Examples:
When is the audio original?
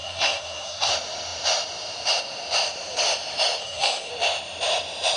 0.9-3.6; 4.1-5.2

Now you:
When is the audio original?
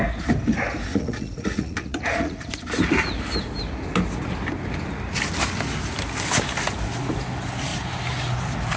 0.0-0.9; 2.5-8.8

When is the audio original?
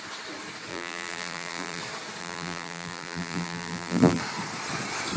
0.0-0.7; 1.8-2.2; 4.2-5.2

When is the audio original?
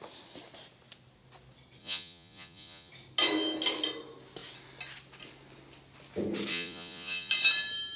0.0-1.8; 2.9-6.5; 7.3-8.0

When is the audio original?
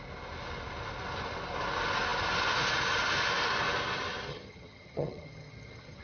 0.0-4.3